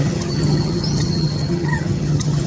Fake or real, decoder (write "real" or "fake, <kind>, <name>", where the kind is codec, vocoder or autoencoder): fake, vocoder, HiFi-GAN